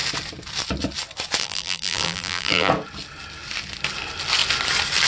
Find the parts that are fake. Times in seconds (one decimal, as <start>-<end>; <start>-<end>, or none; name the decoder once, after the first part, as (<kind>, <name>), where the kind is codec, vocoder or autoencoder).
1.4-2.7 (vocoder, BigVGAN v2)